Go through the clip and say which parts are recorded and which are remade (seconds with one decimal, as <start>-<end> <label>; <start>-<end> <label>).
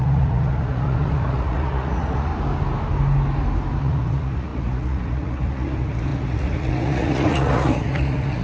0.0-2.3 remade; 2.3-3.8 recorded; 3.8-8.4 remade